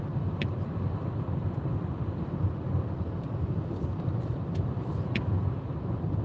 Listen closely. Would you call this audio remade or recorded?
remade